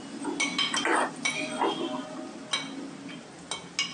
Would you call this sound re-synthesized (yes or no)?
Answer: no